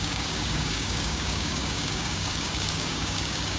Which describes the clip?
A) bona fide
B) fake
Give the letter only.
B